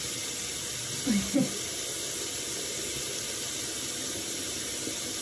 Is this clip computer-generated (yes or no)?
no